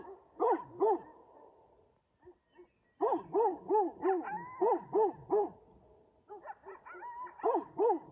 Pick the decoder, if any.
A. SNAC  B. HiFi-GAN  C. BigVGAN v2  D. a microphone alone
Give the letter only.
D